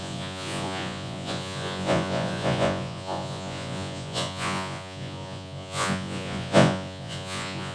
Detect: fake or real fake